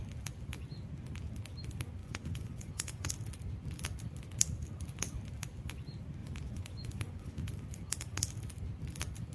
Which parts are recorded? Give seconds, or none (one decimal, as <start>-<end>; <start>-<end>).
0.0-2.0; 3.1-6.2; 7.3-9.3